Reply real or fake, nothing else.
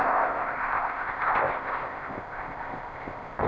fake